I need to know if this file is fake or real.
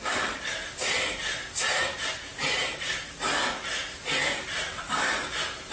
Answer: real